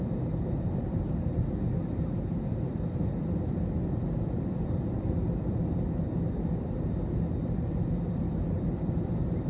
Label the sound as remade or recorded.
recorded